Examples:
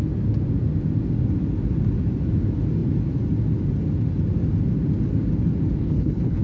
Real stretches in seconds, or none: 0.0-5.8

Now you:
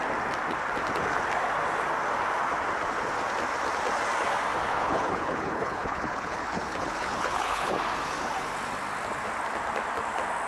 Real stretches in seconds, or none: 0.0-4.7; 7.7-10.5

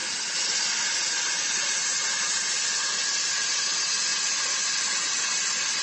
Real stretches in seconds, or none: 0.0-5.8

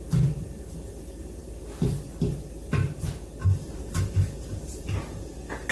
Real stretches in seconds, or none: 0.0-5.7

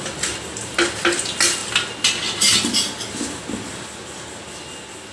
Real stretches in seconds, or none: 0.0-5.1

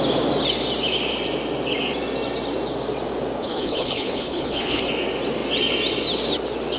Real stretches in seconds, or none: 0.0-3.4; 4.8-6.8

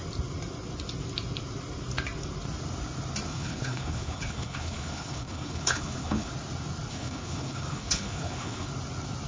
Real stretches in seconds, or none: 0.0-3.3; 6.3-6.9; 8.7-9.3

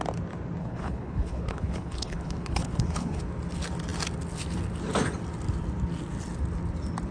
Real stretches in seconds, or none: 0.0-0.6; 3.2-7.1